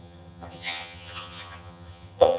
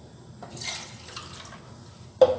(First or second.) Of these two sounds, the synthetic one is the first